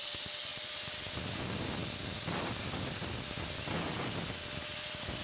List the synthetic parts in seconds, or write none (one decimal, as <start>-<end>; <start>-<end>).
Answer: none

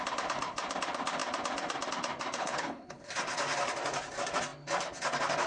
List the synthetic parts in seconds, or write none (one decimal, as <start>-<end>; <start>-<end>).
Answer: 2.4-3.1

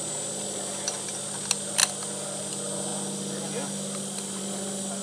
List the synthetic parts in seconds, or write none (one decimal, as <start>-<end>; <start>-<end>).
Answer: none

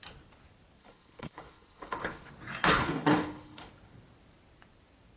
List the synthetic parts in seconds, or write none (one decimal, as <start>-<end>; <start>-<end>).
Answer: 0.8-2.3; 2.7-3.7

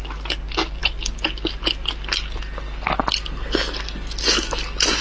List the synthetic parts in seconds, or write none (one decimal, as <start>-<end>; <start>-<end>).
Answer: none

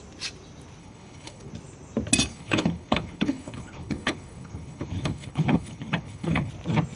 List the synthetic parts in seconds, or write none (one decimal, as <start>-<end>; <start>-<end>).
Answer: 0.8-1.5; 2.3-6.5